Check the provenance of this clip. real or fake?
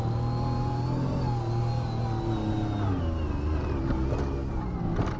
real